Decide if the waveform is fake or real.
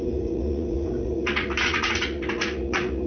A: fake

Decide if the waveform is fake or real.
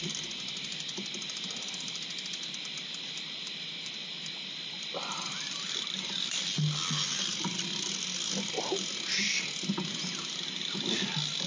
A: real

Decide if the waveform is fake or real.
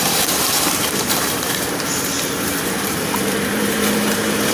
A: fake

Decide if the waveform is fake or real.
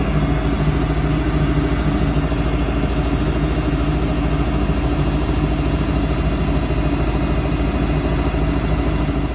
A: real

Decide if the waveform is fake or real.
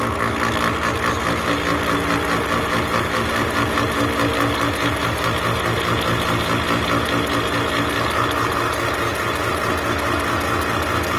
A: real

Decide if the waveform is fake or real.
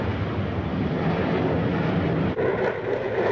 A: real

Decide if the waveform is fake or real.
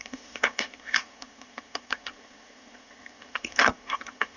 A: fake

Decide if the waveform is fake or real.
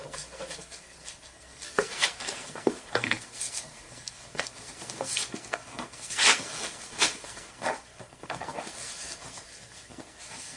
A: fake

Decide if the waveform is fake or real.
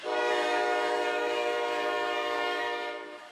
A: fake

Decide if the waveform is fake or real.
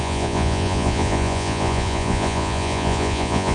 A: fake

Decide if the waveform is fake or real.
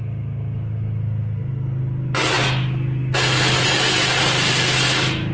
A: real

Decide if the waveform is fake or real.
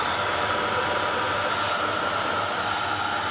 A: real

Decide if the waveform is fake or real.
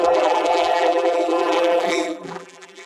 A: fake